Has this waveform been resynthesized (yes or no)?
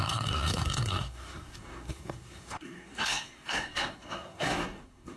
yes